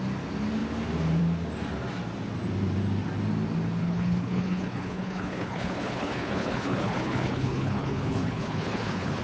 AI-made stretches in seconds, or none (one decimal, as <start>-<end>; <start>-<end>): 3.8-9.2